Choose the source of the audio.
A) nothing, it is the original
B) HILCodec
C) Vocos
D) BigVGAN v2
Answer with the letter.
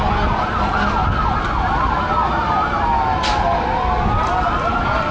A